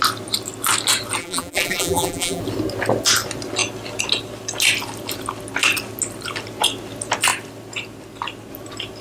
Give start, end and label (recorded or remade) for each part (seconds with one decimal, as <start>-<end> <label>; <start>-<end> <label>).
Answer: 0.0-1.2 recorded; 1.2-2.4 remade; 2.4-9.0 recorded